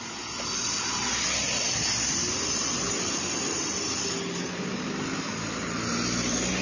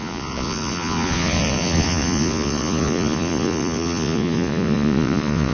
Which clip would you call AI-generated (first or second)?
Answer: second